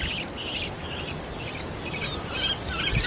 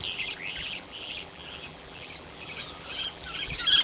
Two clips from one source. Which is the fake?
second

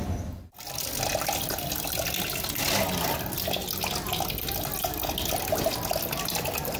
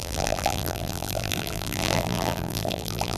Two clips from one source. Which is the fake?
second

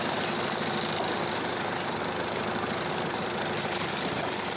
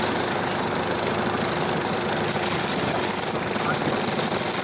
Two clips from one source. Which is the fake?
first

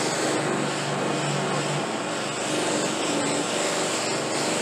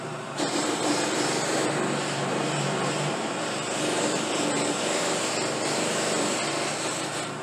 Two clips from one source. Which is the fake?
second